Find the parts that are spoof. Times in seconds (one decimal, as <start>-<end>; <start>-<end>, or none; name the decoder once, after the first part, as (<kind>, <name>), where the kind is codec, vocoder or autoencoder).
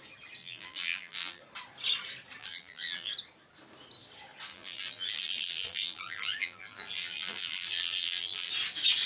0.4-1.4 (vocoder, BigVGAN v2); 2.4-3.1; 4.5-8.5